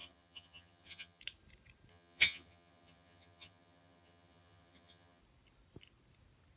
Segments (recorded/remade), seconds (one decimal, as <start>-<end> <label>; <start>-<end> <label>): 0.0-1.2 remade; 1.2-1.9 recorded; 1.9-5.2 remade; 5.2-6.6 recorded